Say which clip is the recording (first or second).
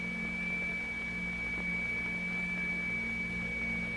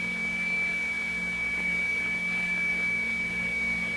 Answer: first